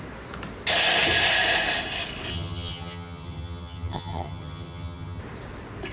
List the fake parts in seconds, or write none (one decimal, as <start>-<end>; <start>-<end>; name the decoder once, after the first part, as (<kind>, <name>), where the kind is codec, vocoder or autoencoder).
2.3-5.2 (vocoder, HiFi-GAN)